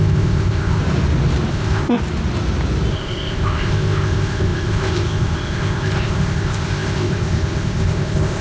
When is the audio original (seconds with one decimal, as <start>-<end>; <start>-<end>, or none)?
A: 0.8-1.5; 2.0-2.9